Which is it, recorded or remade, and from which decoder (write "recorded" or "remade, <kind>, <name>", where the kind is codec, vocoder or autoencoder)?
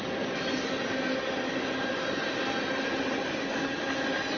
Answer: recorded